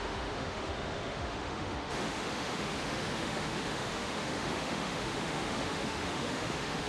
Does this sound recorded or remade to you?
remade